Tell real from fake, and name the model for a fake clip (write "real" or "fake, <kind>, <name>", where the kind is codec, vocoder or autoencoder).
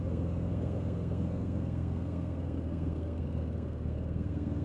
fake, codec, SNAC